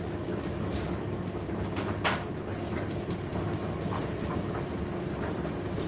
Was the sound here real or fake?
real